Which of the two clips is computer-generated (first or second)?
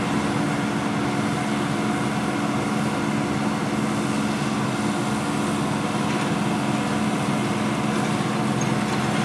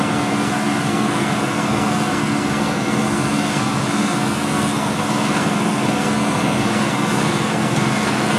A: second